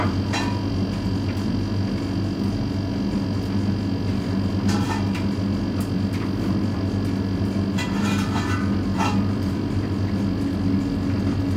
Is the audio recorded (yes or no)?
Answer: yes